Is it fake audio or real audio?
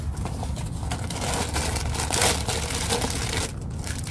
real